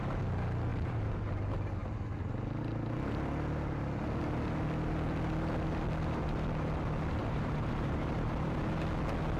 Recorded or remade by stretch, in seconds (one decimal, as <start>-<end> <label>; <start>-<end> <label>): 0.0-0.7 recorded; 0.7-1.3 remade; 1.3-7.2 recorded; 7.2-8.6 remade; 8.6-9.4 recorded